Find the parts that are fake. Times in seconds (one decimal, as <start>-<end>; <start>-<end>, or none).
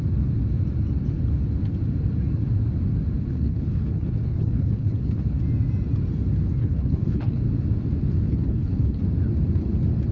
3.3-5.2; 6.6-7.4; 8.3-9.0